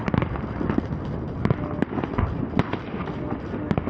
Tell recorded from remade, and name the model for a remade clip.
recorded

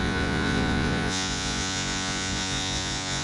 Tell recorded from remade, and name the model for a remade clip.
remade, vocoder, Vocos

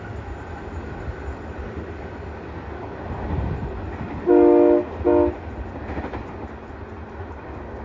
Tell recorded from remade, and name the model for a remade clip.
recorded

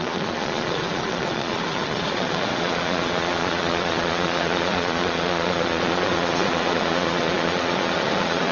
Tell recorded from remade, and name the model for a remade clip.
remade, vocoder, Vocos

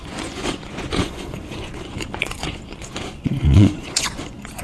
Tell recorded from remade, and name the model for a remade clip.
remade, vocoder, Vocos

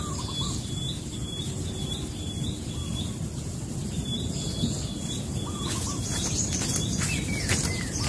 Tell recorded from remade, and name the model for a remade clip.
recorded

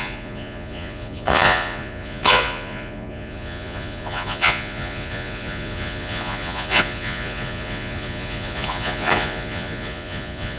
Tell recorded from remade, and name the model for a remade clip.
remade, vocoder, Vocos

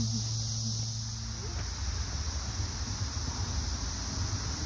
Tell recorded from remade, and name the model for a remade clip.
recorded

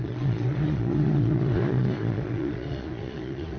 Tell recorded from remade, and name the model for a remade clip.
remade, vocoder, Vocos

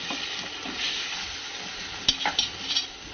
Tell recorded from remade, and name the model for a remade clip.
recorded